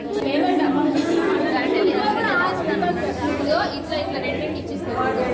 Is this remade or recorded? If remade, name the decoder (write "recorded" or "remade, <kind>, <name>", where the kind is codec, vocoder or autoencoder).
recorded